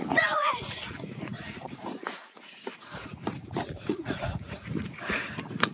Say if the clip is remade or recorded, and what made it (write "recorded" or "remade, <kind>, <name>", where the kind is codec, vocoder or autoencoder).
remade, vocoder, Vocos